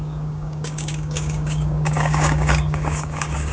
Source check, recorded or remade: remade